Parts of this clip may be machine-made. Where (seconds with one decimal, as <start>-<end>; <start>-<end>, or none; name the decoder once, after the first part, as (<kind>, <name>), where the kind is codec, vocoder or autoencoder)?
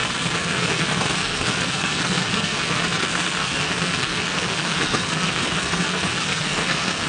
0.0-7.1 (codec, SNAC)